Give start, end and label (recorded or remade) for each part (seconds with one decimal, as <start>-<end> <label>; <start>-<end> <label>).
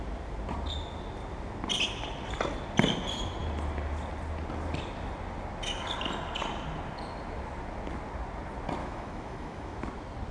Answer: 0.0-8.8 recorded; 8.8-9.8 remade; 9.8-10.3 recorded